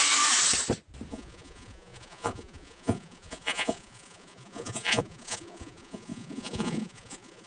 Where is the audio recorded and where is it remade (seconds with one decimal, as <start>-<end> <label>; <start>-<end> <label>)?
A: 0.0-1.1 recorded; 1.1-7.5 remade